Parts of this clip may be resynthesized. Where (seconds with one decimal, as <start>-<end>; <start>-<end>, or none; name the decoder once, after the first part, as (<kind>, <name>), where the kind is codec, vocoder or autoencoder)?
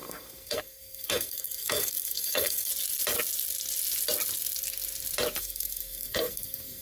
0.0-2.7 (codec, SNAC); 5.4-6.8